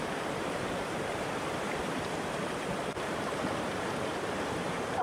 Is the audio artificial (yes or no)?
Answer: yes